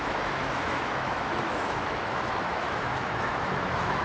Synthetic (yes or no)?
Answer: yes